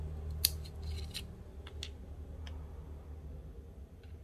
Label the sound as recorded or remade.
recorded